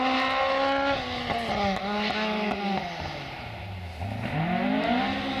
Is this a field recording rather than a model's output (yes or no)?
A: yes